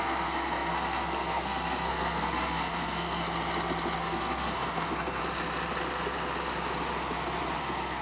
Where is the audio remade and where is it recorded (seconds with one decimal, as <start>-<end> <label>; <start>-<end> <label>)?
0.0-3.2 remade; 3.2-4.0 recorded; 4.0-5.2 remade; 5.2-7.6 recorded; 7.6-8.0 remade